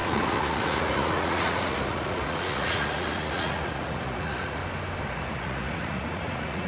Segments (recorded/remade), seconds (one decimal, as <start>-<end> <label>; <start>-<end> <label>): 0.0-4.6 remade; 4.6-5.1 recorded; 5.1-6.7 remade